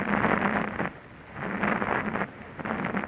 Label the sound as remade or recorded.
recorded